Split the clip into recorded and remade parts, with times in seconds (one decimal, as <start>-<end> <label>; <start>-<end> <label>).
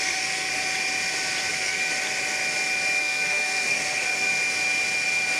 0.0-0.5 remade; 0.5-1.5 recorded; 1.5-1.9 remade; 1.9-3.0 recorded; 3.0-4.3 remade; 4.3-5.4 recorded